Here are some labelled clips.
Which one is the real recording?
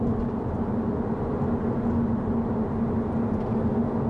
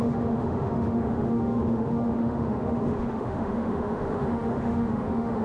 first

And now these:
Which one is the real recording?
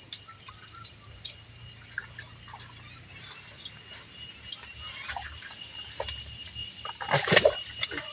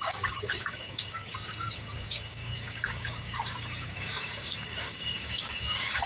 first